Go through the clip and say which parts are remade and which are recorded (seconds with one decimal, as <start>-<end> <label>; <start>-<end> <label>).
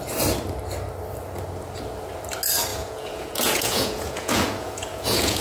0.0-2.7 recorded; 2.7-5.4 remade